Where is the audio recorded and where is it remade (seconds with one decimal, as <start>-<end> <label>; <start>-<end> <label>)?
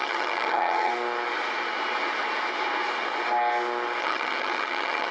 0.0-0.9 remade; 0.9-4.0 recorded; 4.0-5.1 remade